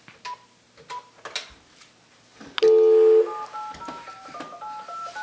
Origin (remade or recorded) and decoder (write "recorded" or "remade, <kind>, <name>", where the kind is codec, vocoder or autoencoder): recorded